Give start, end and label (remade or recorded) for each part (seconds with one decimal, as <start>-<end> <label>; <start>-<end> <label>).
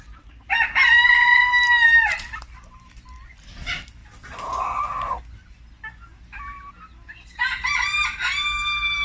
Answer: 0.0-9.0 recorded